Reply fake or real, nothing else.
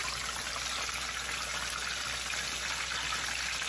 real